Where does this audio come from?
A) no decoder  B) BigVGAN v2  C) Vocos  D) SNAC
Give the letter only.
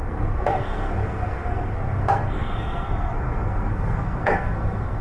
D